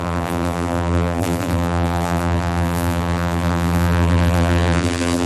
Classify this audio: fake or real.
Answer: fake